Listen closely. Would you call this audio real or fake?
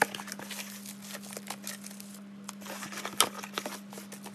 real